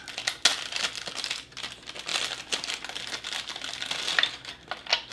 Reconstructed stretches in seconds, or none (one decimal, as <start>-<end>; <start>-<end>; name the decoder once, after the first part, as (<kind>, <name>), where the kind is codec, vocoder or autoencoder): none